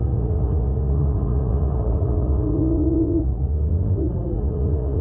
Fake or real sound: fake